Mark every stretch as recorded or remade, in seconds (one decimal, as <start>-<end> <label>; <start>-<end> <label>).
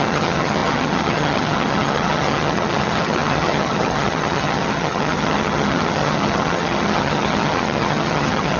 0.0-8.6 remade